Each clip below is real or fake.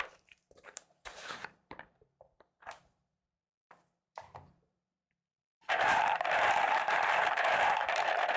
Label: fake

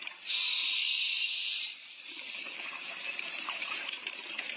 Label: fake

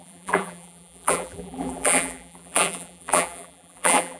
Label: fake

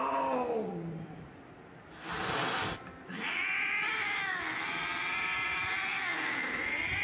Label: real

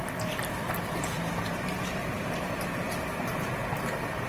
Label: fake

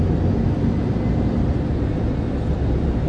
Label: real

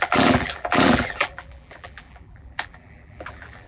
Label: fake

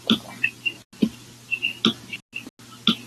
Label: real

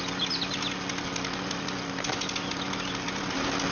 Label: real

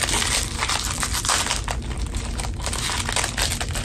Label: real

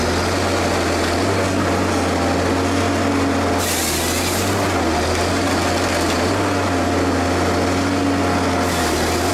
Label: real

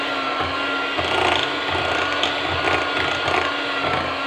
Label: real